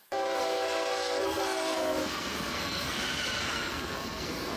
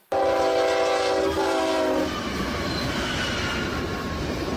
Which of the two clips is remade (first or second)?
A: first